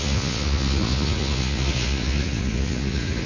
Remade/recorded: remade